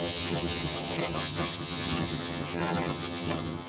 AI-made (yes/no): yes